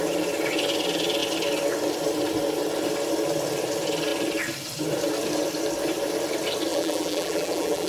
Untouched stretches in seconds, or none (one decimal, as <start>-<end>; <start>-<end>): 0.0-6.7